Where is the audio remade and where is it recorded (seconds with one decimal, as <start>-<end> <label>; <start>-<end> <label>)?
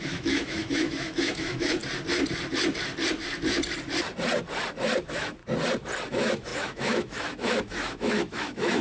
0.0-1.8 remade; 1.8-5.0 recorded; 5.0-5.4 remade; 5.4-6.1 recorded; 6.1-8.8 remade